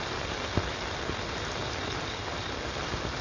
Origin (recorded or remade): recorded